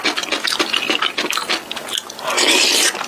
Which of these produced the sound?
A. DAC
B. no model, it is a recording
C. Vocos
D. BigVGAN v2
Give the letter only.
B